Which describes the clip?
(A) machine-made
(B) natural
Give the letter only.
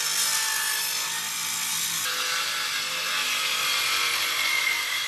B